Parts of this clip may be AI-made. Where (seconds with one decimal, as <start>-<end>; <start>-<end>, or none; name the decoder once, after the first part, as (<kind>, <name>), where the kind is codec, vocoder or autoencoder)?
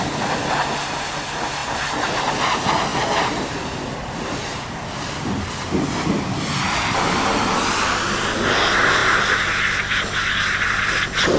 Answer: none